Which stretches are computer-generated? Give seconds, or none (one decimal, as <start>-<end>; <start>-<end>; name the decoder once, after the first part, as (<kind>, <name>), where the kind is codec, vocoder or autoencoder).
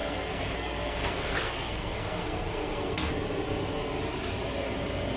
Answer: 0.0-3.1 (codec, SNAC)